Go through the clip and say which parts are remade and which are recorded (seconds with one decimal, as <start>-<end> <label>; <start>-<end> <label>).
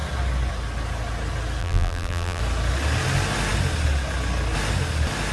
0.0-1.6 recorded; 1.6-2.4 remade; 2.4-5.3 recorded